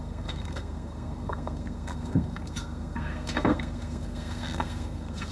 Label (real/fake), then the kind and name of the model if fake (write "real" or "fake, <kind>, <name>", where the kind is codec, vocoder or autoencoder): fake, codec, SNAC